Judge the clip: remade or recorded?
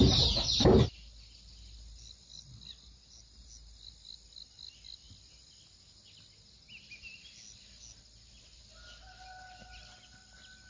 recorded